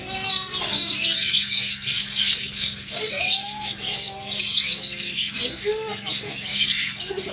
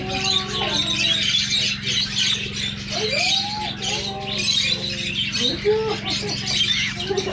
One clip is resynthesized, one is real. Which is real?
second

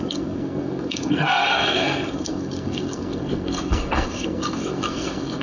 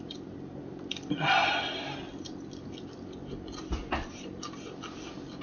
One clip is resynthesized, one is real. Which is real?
second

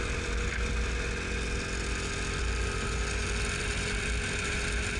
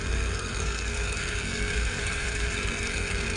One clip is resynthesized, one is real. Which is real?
first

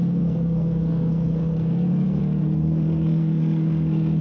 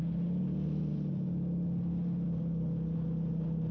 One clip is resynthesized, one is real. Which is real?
second